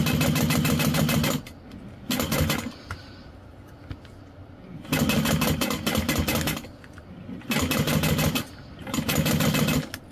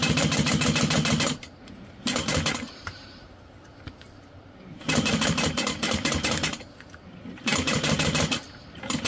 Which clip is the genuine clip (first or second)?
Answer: first